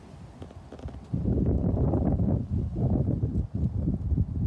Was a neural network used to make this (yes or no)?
no